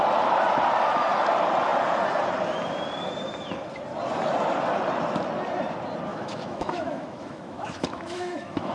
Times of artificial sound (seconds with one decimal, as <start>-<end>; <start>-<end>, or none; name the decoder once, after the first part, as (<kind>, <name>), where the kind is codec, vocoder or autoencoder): 6.1-8.7 (autoencoder, DAC-VAE)